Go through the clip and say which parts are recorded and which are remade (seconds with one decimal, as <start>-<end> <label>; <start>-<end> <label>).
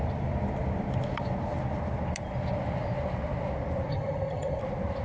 0.0-3.9 recorded; 3.9-4.6 remade; 4.6-5.0 recorded